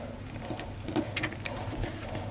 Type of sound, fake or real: real